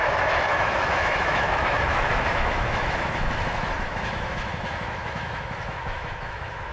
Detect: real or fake fake